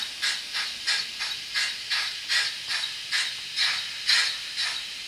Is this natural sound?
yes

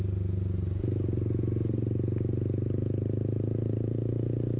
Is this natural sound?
yes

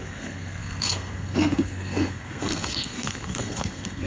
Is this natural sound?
no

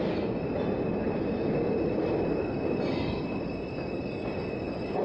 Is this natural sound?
yes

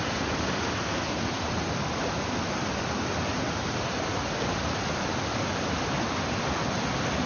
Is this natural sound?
yes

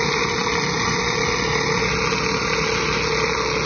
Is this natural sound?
yes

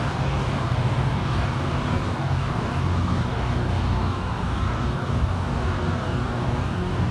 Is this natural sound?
no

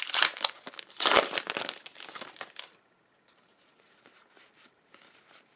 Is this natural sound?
yes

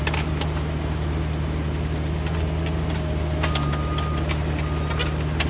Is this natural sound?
yes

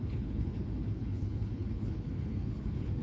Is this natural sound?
no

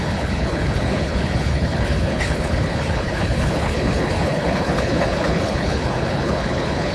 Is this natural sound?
no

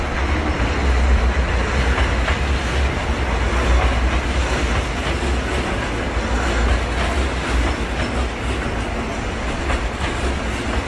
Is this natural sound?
yes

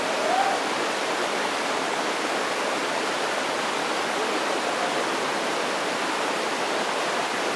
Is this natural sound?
yes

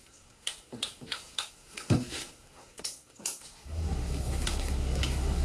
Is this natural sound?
no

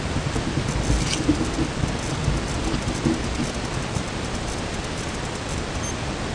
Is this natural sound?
yes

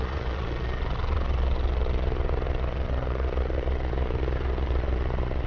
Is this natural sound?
no